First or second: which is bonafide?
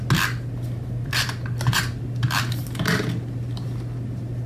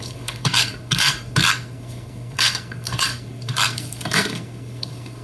first